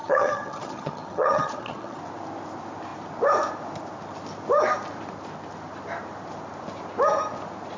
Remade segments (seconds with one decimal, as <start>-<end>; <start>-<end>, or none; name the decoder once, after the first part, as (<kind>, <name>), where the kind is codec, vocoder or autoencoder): 0.0-2.0 (vocoder, HiFi-GAN)